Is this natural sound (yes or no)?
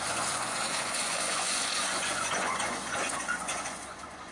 no